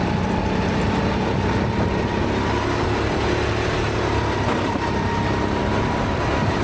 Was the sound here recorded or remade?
recorded